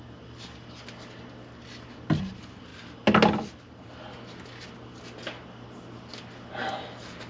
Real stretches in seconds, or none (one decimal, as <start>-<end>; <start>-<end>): 0.0-7.3